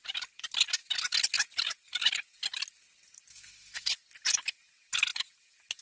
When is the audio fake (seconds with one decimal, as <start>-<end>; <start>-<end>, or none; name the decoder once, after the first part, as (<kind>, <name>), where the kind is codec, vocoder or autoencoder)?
3.3-3.9 (autoencoder, DAC-VAE)